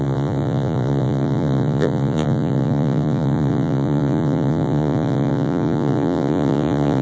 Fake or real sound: fake